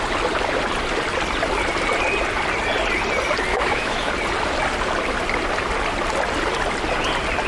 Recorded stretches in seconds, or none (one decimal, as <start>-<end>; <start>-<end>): 0.0-3.5; 4.1-7.5